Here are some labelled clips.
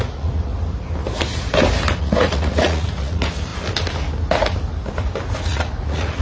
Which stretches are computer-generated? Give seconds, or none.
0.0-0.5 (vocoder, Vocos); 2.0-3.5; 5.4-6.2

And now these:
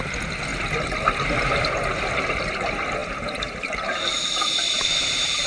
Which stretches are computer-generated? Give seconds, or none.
none